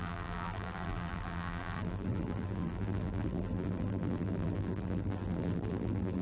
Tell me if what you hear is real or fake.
fake